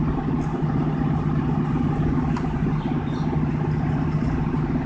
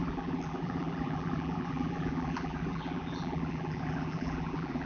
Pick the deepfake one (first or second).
second